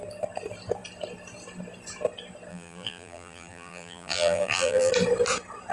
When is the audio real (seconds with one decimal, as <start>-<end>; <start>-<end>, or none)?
0.0-2.5; 4.9-5.7

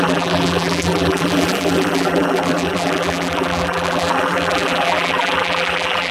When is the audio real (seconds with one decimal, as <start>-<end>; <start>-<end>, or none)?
none

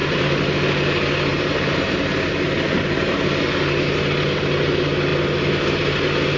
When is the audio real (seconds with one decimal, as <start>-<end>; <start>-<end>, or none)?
0.6-1.3; 1.9-6.4

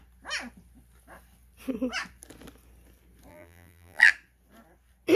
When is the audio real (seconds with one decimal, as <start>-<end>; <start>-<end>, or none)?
0.0-3.3; 4.1-5.2

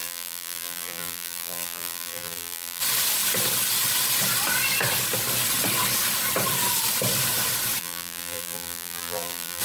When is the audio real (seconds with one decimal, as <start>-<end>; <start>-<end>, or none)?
2.8-7.8

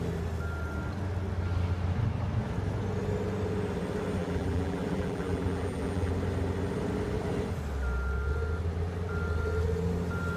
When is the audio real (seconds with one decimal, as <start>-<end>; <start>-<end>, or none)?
0.0-4.2; 6.1-10.4